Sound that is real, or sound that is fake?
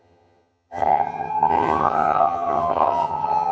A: fake